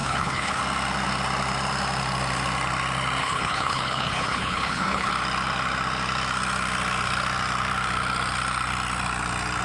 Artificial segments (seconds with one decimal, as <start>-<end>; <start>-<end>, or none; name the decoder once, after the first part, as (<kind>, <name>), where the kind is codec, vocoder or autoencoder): 0.0-0.6 (codec, HILCodec); 3.2-5.1